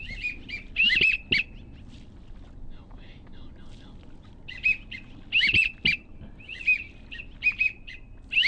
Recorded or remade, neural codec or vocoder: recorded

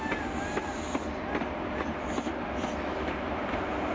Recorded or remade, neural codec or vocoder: recorded